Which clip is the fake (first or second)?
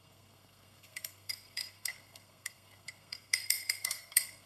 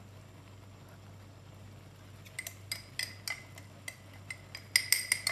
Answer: first